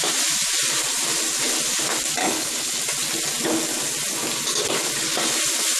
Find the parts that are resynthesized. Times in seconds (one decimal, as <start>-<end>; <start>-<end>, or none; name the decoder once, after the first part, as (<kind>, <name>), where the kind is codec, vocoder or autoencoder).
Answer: 2.2-2.8 (codec, HILCodec)